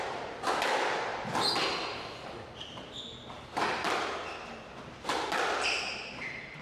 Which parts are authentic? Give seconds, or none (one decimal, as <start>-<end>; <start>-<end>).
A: 0.0-6.6